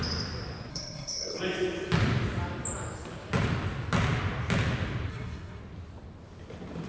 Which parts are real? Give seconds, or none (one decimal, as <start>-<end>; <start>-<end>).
0.0-0.7; 1.4-5.1; 5.6-6.9